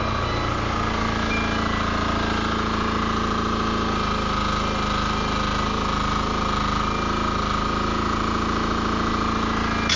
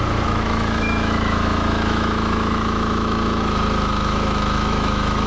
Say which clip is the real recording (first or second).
first